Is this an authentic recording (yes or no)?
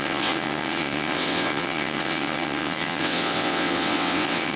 no